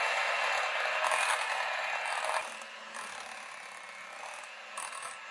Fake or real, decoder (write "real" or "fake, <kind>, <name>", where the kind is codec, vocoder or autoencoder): real